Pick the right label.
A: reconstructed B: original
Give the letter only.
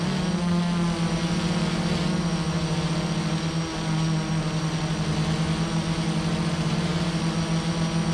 B